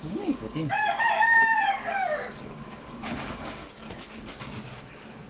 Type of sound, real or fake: fake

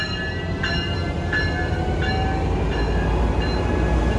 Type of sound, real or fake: real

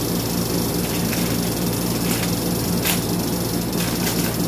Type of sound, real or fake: real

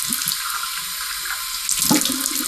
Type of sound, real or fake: real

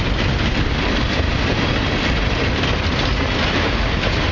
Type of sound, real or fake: real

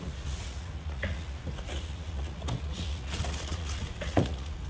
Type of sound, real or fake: fake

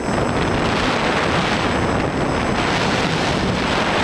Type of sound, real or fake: real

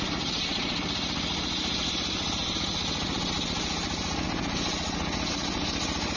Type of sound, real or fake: real